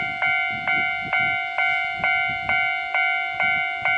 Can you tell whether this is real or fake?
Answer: real